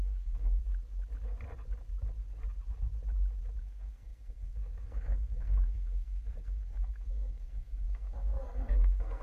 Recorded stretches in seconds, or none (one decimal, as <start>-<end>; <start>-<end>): 0.6-3.6